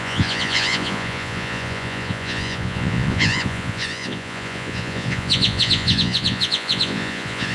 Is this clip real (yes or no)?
no